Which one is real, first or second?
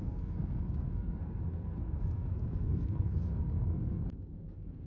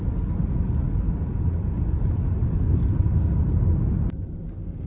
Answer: second